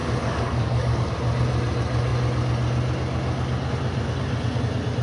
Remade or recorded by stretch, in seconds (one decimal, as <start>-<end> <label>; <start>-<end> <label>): 0.0-1.1 remade; 1.1-5.0 recorded